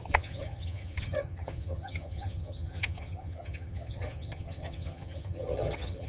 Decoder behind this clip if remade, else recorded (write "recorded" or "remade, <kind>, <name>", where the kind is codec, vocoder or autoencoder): remade, vocoder, HiFi-GAN